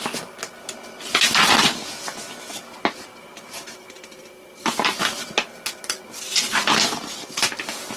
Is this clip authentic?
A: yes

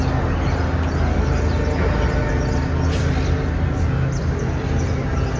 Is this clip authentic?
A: yes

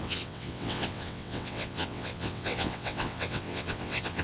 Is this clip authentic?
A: no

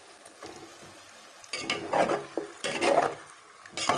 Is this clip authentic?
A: yes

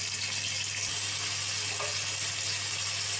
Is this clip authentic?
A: yes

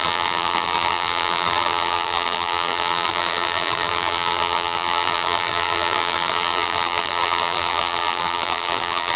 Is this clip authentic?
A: no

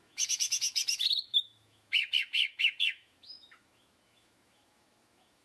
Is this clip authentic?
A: no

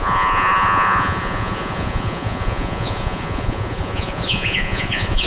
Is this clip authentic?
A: no